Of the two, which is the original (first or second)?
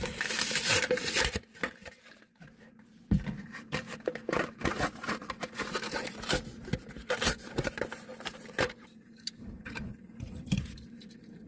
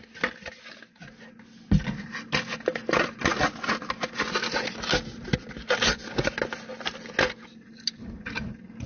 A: second